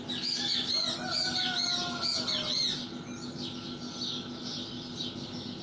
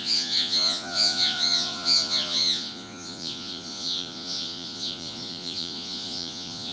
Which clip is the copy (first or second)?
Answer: second